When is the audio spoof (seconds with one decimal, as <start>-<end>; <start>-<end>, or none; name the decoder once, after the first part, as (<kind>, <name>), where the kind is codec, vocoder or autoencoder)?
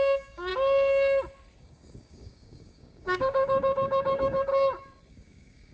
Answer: 0.0-0.5 (codec, DAC); 1.6-4.5; 5.1-5.7